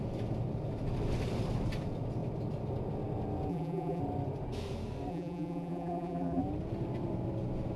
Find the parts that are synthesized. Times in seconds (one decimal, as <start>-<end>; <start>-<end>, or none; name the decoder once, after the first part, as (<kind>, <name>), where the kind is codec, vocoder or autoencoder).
3.5-4.0 (vocoder, BigVGAN v2); 5.1-6.4